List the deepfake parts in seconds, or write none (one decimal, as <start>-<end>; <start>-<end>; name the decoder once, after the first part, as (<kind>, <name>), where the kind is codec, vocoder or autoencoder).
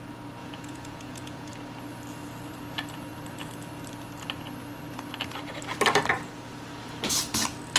0.4-1.5 (vocoder, Vocos)